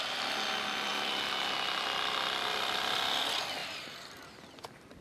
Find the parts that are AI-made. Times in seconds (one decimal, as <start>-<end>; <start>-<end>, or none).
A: 3.6-4.4